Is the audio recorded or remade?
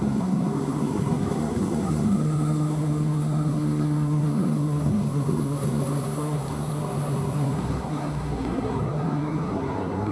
remade